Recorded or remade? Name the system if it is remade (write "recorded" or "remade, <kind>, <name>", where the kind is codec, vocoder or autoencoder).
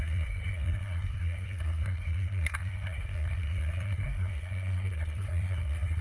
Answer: remade, codec, SNAC